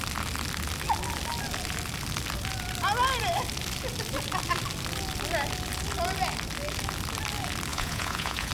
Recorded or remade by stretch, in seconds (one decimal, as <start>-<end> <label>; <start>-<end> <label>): 0.0-7.7 recorded; 7.7-8.5 remade